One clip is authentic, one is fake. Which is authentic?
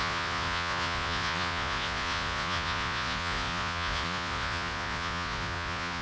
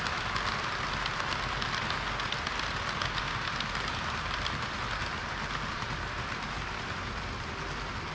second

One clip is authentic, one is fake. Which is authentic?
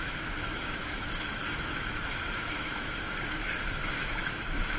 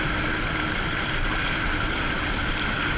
second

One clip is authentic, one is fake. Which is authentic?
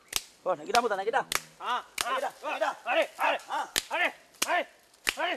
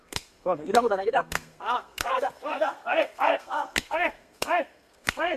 first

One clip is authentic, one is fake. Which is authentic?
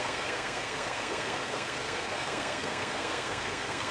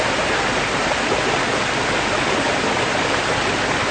second